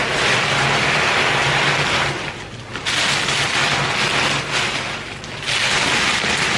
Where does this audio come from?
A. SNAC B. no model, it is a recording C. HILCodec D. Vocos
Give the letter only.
B